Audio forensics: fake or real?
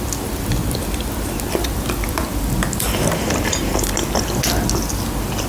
real